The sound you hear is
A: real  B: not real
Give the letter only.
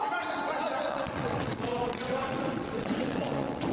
B